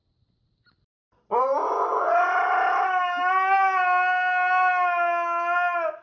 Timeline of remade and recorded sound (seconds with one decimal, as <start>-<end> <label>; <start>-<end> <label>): 0.0-6.0 recorded